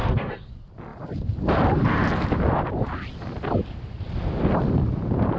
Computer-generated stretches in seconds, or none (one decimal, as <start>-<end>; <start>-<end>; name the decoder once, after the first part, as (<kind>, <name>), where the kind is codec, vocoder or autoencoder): 0.0-0.5 (codec, SNAC)